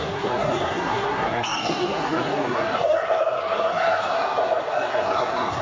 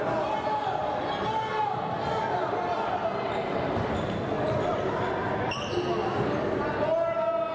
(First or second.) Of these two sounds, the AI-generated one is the first